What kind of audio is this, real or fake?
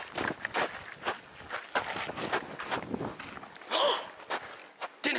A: real